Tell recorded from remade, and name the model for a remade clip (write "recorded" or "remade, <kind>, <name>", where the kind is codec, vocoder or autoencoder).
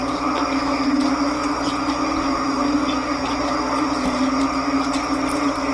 recorded